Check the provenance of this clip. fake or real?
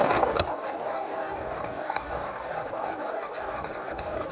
fake